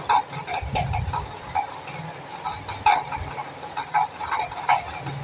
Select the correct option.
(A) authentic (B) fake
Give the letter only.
A